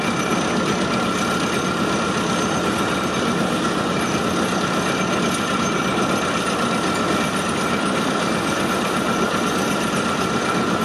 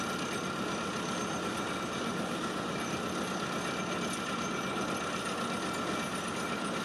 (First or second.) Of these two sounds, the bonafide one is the second